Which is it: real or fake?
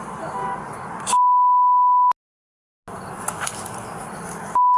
real